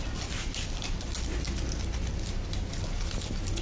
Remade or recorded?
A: recorded